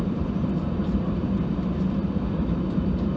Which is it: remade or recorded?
remade